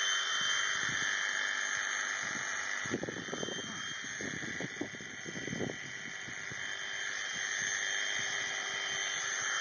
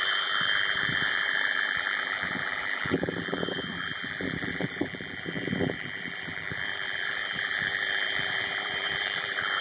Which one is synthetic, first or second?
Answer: second